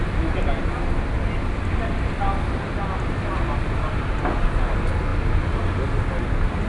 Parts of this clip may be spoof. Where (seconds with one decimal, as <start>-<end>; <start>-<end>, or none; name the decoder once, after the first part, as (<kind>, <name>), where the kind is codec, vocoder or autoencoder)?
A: none